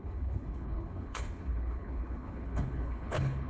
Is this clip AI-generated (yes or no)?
yes